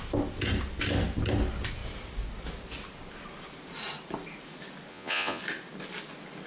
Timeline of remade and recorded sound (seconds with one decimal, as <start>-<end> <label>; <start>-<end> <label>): 0.0-4.9 recorded; 4.9-5.4 remade; 5.4-6.5 recorded